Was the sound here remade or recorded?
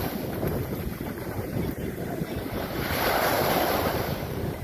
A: remade